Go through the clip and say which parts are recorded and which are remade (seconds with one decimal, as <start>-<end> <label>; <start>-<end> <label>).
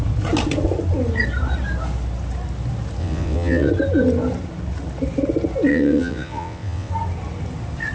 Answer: 0.0-3.0 recorded; 3.0-3.7 remade; 3.7-5.7 recorded; 5.7-6.9 remade; 6.9-7.9 recorded